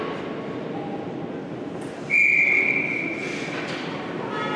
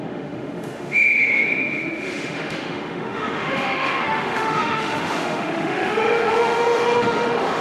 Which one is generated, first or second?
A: second